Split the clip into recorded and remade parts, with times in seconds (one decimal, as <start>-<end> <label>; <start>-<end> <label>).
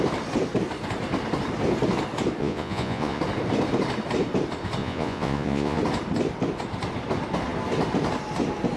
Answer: 0.0-2.4 recorded; 2.4-3.2 remade; 3.2-4.8 recorded; 4.8-5.8 remade; 5.8-8.8 recorded